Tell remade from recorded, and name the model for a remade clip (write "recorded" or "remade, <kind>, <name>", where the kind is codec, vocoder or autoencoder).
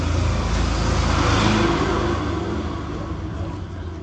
recorded